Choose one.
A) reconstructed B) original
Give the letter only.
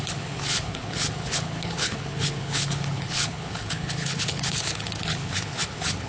A